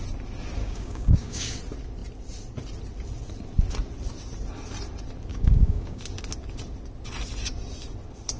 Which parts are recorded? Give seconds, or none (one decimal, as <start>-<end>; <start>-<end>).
0.0-0.6; 1.6-5.3; 6.0-8.4